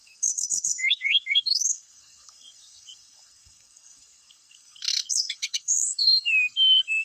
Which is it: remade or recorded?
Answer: remade